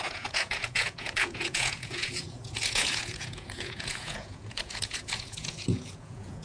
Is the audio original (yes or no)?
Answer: no